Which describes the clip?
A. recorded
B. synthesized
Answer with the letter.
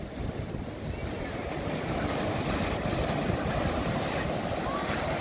A